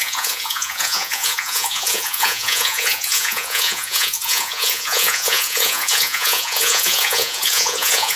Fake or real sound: fake